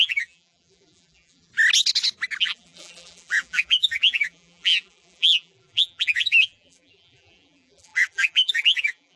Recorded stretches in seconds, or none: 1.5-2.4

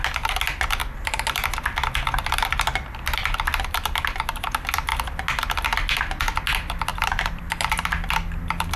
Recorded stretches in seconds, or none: 0.0-0.8; 4.4-6.9; 7.4-8.8

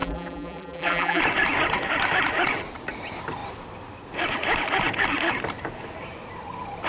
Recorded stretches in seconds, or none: 1.2-6.9

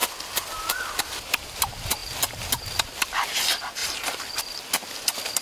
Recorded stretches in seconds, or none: 0.8-2.0; 3.2-3.8; 4.4-5.4

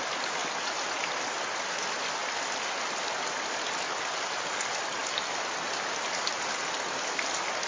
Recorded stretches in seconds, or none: 0.0-7.7

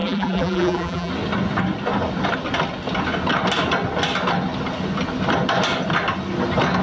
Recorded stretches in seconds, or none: 1.1-6.8